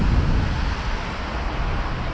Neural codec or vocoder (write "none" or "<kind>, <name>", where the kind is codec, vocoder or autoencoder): none